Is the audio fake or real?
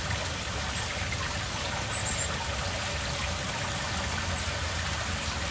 real